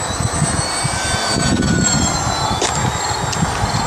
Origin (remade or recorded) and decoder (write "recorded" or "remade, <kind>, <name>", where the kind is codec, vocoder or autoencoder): remade, vocoder, BigVGAN v2